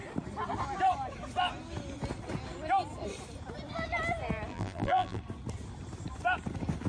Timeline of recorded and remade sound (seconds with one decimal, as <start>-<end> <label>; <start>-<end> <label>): 0.0-4.5 recorded; 4.5-5.2 remade; 5.2-6.9 recorded